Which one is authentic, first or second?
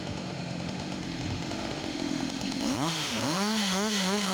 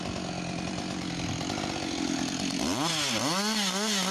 second